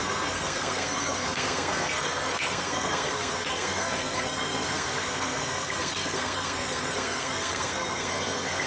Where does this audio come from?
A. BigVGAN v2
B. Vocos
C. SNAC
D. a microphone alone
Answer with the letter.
C